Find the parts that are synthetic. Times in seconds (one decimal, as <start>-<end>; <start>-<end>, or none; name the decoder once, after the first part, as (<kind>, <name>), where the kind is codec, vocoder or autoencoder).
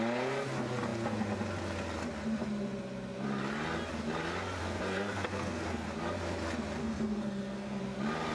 4.6-5.9 (codec, SNAC); 6.8-7.8